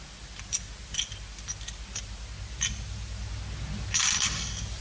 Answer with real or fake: real